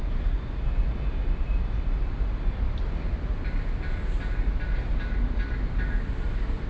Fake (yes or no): no